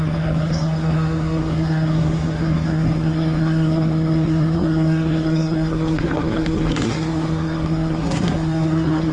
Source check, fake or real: fake